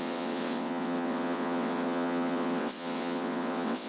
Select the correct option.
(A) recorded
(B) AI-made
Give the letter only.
B